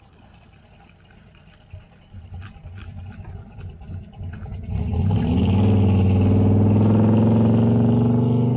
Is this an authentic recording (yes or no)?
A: yes